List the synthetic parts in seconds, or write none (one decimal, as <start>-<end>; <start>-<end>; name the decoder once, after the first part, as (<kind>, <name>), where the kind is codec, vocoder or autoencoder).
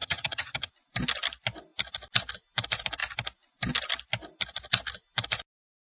0.0-0.7 (vocoder, HiFi-GAN)